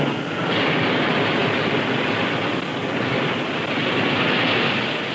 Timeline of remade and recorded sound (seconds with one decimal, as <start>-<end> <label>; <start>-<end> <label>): 0.0-5.1 recorded